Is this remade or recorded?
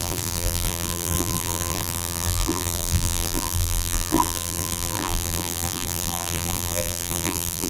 remade